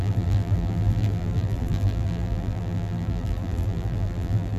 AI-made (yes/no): yes